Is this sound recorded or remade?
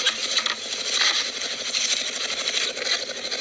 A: recorded